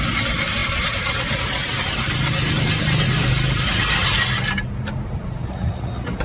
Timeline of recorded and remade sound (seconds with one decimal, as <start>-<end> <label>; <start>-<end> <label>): 0.0-5.4 recorded; 5.4-6.2 remade